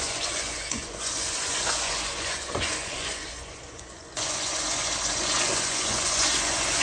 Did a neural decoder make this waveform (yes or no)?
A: yes